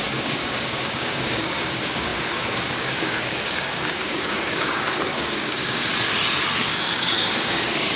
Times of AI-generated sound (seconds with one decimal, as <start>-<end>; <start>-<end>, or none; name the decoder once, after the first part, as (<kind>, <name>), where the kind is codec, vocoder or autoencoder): 0.0-5.9 (codec, DAC); 6.6-8.0